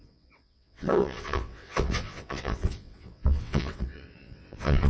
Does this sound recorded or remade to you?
remade